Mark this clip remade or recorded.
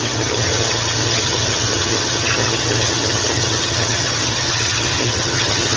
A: remade